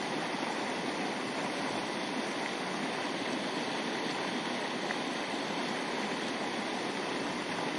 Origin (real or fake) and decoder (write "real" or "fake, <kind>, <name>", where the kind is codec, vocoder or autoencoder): real